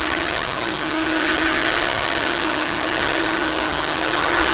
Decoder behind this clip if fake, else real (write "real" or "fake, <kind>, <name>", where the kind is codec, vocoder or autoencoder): fake, vocoder, HiFi-GAN